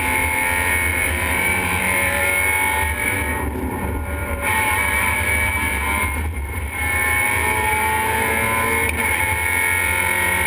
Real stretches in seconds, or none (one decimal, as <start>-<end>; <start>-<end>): 0.0-0.9; 2.2-3.3; 3.8-4.2; 8.3-10.5